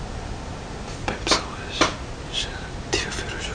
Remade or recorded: recorded